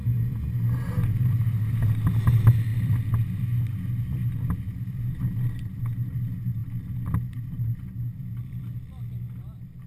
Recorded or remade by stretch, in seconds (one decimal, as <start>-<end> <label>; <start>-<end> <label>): 0.0-9.9 recorded